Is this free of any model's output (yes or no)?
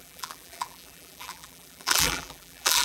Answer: no